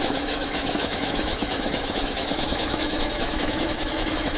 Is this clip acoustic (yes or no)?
no